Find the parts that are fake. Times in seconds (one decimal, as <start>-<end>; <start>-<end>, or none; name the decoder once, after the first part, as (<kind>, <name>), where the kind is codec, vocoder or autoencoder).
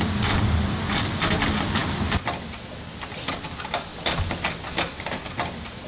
none